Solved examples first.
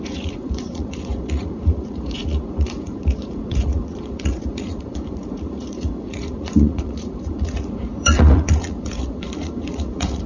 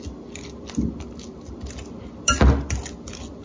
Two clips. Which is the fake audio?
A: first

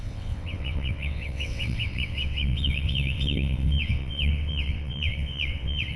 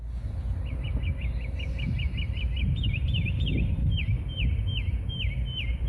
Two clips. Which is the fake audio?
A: first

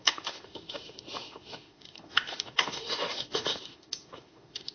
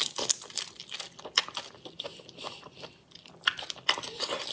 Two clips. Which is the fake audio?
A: first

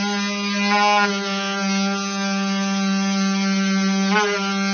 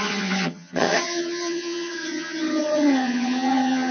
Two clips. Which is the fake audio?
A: second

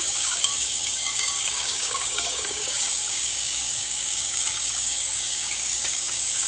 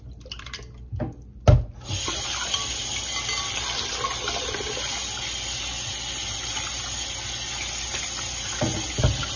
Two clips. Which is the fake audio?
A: first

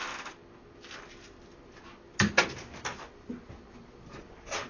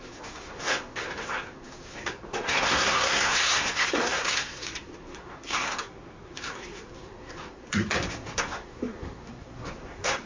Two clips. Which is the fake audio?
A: second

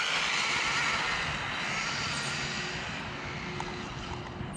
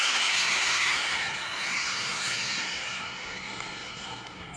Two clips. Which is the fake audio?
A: second